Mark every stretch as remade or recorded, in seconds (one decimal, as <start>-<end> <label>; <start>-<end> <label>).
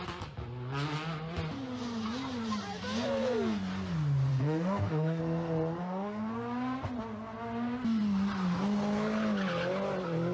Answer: 0.0-4.3 recorded; 4.3-5.2 remade; 5.2-5.8 recorded; 5.8-6.3 remade; 6.3-10.3 recorded